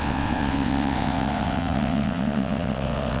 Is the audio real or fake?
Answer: fake